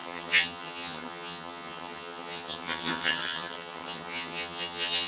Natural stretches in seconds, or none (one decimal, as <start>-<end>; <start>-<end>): none